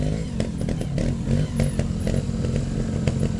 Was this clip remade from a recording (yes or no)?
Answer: no